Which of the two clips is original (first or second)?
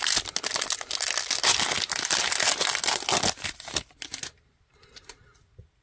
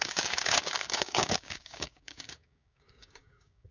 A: first